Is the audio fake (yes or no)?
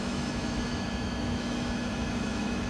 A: yes